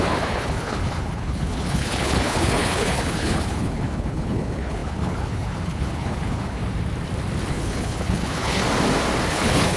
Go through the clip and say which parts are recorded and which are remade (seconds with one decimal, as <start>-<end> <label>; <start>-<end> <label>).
0.0-6.6 remade; 6.6-7.5 recorded; 7.5-8.6 remade; 8.6-9.3 recorded; 9.3-9.8 remade